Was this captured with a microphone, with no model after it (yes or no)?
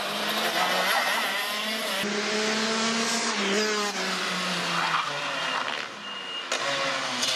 yes